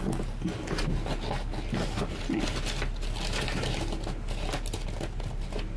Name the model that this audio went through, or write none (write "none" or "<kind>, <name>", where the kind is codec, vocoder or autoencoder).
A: none